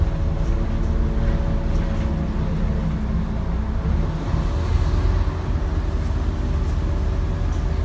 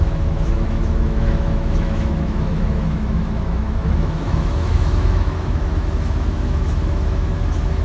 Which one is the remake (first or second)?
second